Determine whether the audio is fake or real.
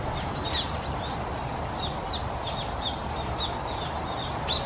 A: real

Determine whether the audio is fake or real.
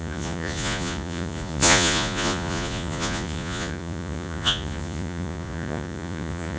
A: fake